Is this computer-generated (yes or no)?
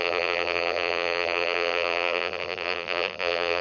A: yes